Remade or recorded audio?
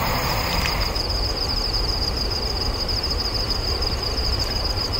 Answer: recorded